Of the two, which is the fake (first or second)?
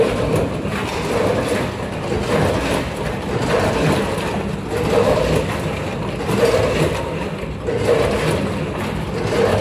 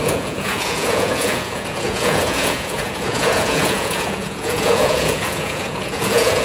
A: second